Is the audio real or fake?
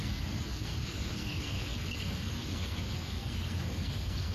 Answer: fake